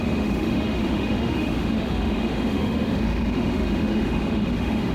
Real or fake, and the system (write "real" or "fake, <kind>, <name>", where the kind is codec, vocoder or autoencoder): fake, autoencoder, DAC-VAE